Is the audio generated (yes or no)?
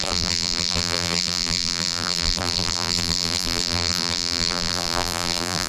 yes